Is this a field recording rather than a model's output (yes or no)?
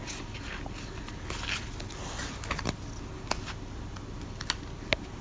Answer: yes